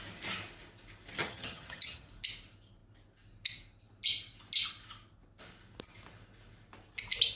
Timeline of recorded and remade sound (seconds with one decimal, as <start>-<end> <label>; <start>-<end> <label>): 0.0-1.2 recorded; 1.2-2.1 remade; 2.1-7.4 recorded